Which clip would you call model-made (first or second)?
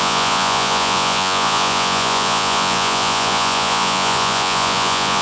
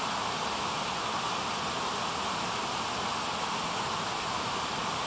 first